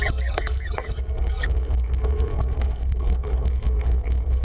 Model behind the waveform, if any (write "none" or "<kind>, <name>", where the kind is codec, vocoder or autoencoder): codec, SNAC